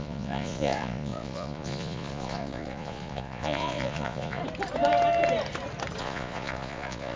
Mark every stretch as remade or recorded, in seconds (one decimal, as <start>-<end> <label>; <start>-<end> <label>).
0.0-4.4 remade; 4.4-6.0 recorded; 6.0-7.2 remade